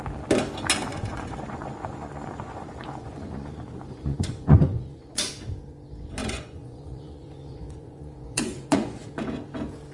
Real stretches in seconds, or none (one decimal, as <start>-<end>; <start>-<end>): 0.0-0.9; 5.3-6.2; 9.2-9.9

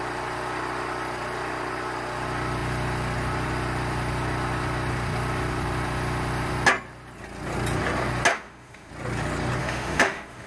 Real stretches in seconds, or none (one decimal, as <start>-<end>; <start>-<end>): 0.0-8.3; 8.9-9.6

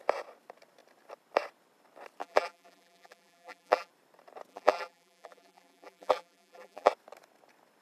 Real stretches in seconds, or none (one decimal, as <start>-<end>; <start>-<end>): 0.0-2.2; 3.9-4.5; 6.9-7.8

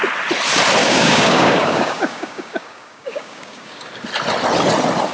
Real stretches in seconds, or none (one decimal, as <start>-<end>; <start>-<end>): 0.0-0.8; 3.9-5.1

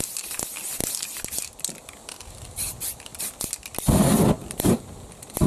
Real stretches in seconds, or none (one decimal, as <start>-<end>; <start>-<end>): 0.0-5.5

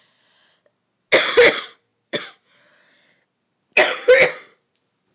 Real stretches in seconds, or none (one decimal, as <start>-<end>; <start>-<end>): 0.0-1.9; 3.1-5.1

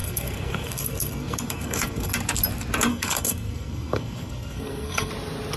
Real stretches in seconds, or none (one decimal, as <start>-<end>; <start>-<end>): 2.1-2.9; 5.1-5.6

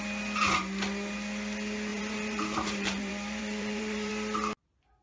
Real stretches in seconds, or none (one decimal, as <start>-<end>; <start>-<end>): 0.0-1.9; 4.1-5.0